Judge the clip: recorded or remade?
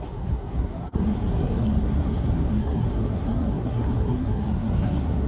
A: remade